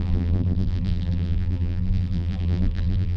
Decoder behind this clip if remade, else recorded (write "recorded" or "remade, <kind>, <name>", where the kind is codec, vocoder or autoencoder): remade, vocoder, BigVGAN v2